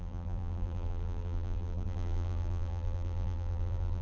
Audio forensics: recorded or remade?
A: remade